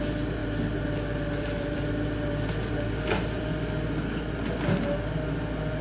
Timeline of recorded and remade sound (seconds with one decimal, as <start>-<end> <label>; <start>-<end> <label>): 0.0-0.4 recorded; 0.4-3.5 remade; 3.5-5.8 recorded